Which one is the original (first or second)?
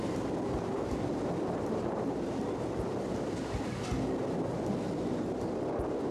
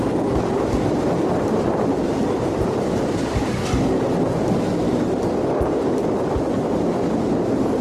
first